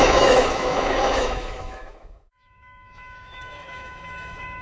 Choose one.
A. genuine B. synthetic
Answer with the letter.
B